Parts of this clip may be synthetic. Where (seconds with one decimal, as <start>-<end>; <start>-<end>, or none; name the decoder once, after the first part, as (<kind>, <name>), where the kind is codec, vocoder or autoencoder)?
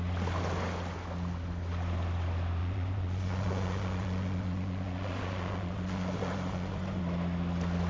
2.6-7.0 (vocoder, Vocos)